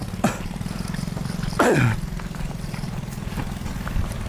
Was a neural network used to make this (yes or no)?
no